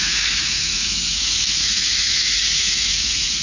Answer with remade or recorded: remade